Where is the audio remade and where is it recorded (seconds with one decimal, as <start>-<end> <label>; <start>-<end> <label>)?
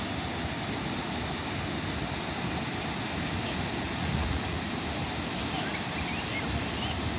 0.0-4.0 recorded; 4.0-4.6 remade; 4.6-7.2 recorded